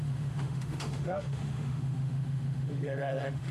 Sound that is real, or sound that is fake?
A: fake